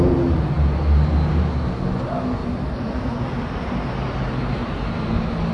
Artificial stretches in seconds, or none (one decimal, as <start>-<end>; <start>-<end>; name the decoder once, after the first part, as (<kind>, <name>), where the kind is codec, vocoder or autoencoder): none